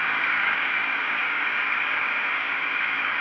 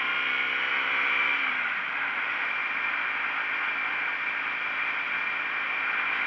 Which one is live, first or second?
second